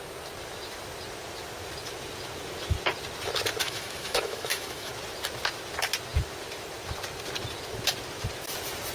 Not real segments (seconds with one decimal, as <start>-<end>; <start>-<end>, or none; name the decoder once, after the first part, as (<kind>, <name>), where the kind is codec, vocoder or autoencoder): 3.6-4.9 (autoencoder, DAC-VAE)